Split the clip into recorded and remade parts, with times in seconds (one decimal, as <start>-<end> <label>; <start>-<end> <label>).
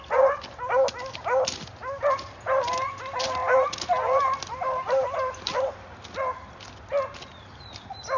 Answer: 0.0-8.2 recorded